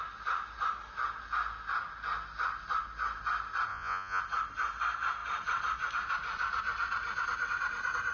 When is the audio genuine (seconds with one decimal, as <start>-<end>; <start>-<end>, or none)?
0.0-3.7; 4.2-8.1